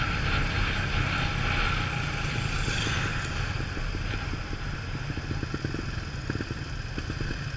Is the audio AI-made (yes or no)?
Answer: no